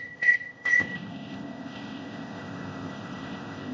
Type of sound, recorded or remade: remade